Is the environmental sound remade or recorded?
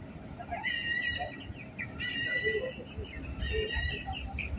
recorded